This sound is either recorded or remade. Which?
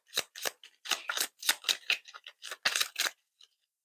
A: recorded